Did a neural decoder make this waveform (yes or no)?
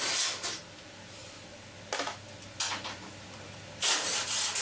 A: no